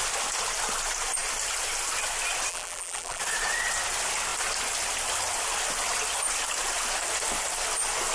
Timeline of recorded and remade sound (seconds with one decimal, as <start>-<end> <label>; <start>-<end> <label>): 0.0-2.5 recorded; 2.5-3.2 remade; 3.2-8.1 recorded